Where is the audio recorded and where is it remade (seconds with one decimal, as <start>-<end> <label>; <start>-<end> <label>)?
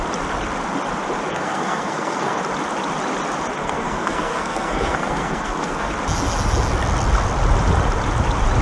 0.0-1.3 recorded; 1.3-2.4 remade; 2.4-3.6 recorded; 3.6-5.9 remade; 5.9-8.6 recorded